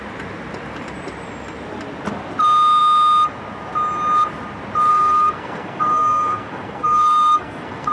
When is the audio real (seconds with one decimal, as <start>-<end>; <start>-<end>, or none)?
0.0-4.9

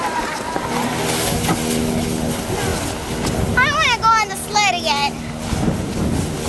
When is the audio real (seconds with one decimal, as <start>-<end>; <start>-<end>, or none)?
0.0-6.5

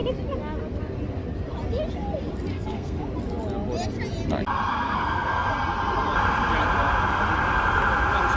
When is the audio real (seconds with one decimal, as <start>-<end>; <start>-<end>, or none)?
0.0-2.5; 3.0-4.7; 5.5-8.4

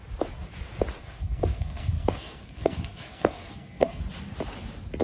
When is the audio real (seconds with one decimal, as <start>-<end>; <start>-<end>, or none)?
0.0-1.0; 4.0-5.0